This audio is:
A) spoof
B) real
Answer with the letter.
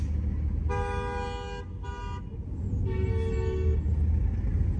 B